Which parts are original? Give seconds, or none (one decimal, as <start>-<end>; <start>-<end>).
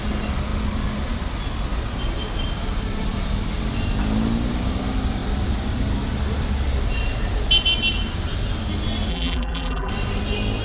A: 0.0-9.1; 9.9-10.6